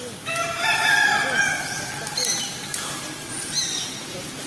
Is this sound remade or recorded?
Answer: recorded